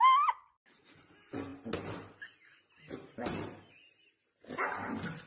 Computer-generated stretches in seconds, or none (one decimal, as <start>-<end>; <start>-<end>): none